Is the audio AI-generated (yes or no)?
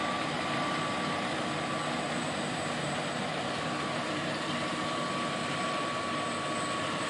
no